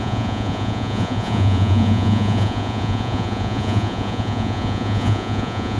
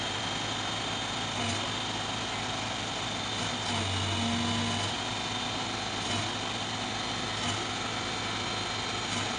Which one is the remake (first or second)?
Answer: first